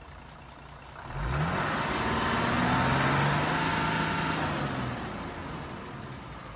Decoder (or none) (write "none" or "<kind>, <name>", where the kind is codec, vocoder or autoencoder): none